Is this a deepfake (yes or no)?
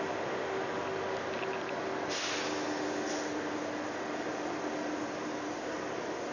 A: no